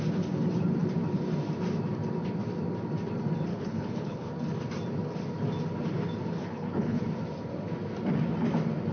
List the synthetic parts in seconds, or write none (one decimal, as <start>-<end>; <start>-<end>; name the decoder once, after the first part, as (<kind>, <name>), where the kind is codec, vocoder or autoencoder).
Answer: 3.5-4.3 (codec, HILCodec); 6.4-7.0